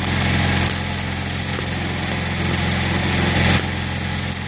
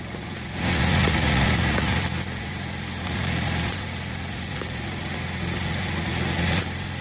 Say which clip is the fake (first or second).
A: second